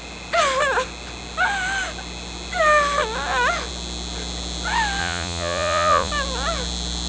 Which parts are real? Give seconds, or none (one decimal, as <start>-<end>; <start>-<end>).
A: 0.0-5.0; 6.1-7.1